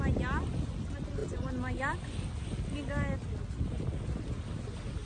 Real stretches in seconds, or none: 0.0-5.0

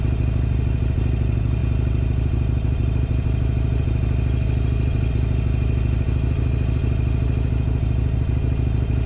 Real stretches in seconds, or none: 0.0-9.1

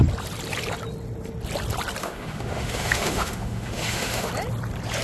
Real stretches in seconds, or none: 0.0-2.0; 4.3-5.0

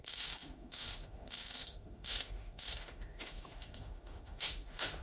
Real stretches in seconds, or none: none

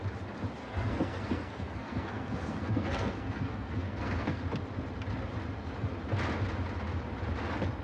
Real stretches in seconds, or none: 0.0-0.6; 4.4-7.8

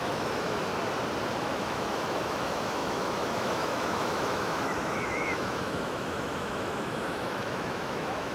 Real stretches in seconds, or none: 0.7-1.4

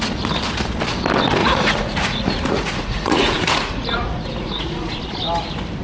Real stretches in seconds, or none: 0.0-1.4; 4.9-5.8

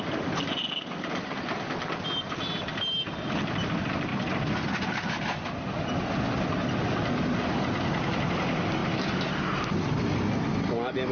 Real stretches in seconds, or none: 0.0-11.1